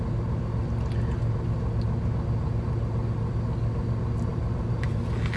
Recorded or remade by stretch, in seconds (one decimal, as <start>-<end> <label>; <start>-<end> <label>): 0.0-4.3 recorded; 4.3-5.0 remade; 5.0-5.4 recorded